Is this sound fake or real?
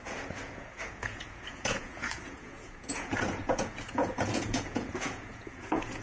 fake